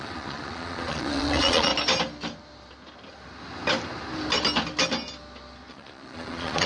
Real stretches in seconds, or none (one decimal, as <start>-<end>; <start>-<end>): 1.7-5.7